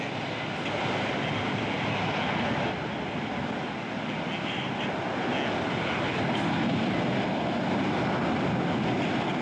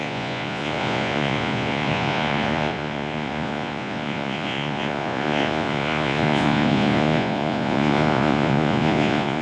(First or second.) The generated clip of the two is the second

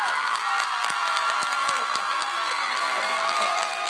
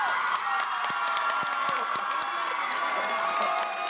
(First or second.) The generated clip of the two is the first